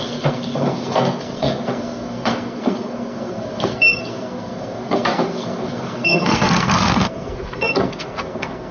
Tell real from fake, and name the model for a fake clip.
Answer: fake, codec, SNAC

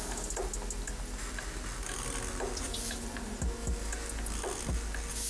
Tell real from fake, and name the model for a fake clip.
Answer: real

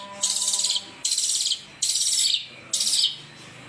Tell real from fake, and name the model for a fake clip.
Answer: real